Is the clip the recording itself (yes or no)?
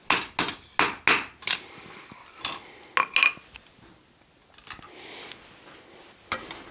yes